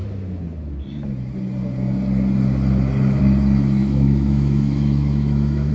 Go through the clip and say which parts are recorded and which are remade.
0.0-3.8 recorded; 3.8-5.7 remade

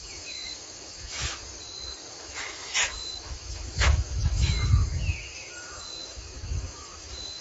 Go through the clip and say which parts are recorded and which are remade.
0.0-1.4 remade; 1.4-2.1 recorded; 2.1-7.4 remade